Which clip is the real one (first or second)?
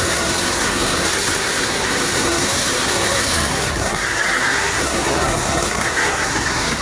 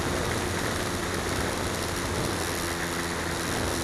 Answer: second